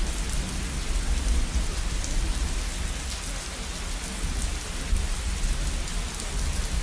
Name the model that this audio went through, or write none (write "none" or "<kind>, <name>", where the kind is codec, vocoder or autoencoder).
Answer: none